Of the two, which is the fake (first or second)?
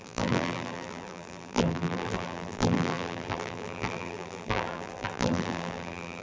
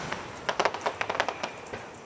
first